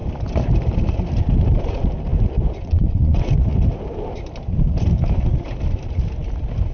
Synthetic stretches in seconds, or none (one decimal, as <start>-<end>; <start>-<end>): 2.6-3.3